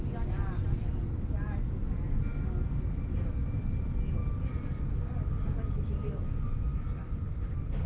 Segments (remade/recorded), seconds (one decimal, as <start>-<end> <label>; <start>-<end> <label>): 0.0-7.9 recorded